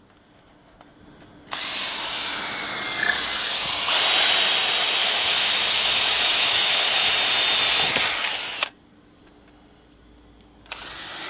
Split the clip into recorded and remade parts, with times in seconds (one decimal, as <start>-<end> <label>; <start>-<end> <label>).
0.0-5.0 recorded; 5.0-7.1 remade; 7.1-11.3 recorded